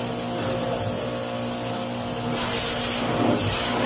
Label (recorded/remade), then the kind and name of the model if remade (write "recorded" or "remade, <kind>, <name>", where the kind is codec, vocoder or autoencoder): recorded